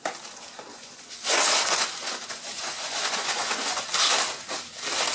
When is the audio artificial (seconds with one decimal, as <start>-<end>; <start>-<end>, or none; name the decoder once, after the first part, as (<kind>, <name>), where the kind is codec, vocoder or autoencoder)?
0.7-3.8 (vocoder, Vocos)